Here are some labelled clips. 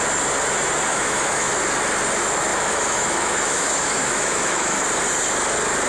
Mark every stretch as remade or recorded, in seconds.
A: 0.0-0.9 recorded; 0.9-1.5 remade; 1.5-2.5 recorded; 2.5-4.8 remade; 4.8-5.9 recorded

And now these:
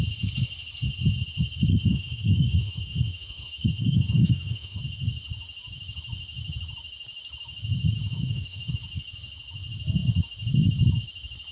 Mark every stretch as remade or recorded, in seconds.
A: 0.0-1.7 recorded; 1.7-4.8 remade; 4.8-8.1 recorded; 8.1-8.7 remade; 8.7-11.5 recorded

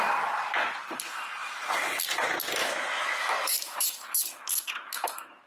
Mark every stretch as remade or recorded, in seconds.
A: 0.0-2.6 recorded; 2.6-5.5 remade

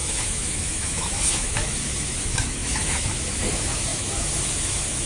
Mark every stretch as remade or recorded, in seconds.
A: 0.0-5.0 remade

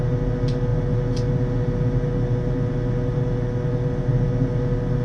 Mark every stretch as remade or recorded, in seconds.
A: 0.0-5.0 recorded

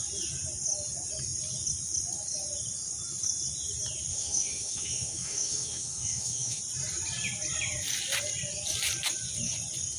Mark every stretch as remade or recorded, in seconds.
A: 0.0-4.1 recorded; 4.1-6.6 remade; 6.6-10.0 recorded

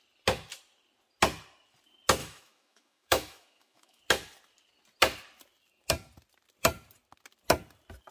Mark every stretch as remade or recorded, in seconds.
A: 0.0-2.2 recorded; 2.2-4.0 remade; 4.0-8.1 recorded

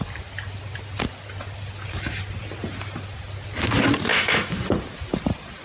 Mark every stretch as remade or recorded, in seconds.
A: 0.0-4.1 recorded; 4.1-4.6 remade; 4.6-5.6 recorded